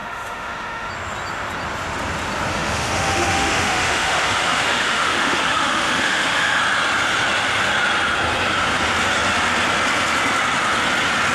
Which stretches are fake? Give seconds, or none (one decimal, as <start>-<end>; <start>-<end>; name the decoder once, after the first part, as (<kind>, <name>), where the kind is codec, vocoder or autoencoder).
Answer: 0.0-0.9 (autoencoder, DAC-VAE); 2.5-6.6